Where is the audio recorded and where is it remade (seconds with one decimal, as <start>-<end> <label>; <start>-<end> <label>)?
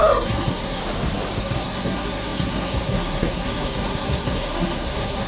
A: 0.0-0.8 remade; 0.8-1.4 recorded; 1.4-5.3 remade